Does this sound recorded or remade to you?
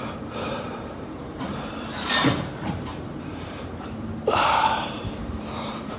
remade